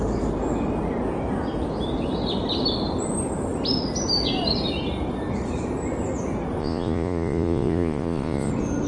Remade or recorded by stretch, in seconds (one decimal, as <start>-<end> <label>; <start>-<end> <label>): 0.0-6.6 recorded; 6.6-8.5 remade; 8.5-8.9 recorded